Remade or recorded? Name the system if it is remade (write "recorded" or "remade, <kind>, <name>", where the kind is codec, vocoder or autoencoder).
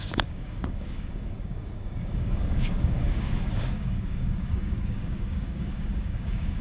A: remade, codec, DAC